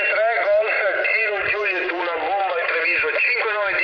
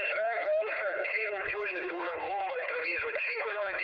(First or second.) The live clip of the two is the first